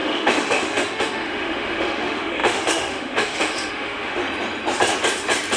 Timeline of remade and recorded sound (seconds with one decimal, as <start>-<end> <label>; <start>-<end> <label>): 0.0-4.2 remade; 4.2-5.6 recorded